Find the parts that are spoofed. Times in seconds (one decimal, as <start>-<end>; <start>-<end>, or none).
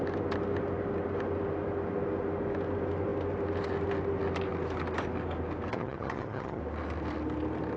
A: 5.7-6.6